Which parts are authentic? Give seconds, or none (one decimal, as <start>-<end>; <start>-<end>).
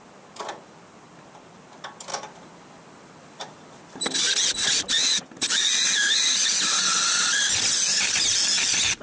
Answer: 0.0-2.1; 4.3-9.0